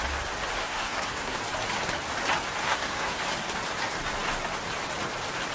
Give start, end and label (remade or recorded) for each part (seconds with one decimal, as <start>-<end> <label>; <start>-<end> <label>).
0.0-0.6 recorded; 0.6-1.4 remade; 1.4-2.6 recorded; 2.6-3.2 remade; 3.2-5.5 recorded